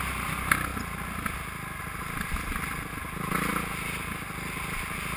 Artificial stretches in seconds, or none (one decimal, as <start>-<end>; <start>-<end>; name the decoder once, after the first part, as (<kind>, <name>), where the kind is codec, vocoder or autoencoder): none